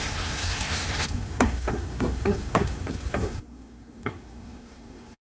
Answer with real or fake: fake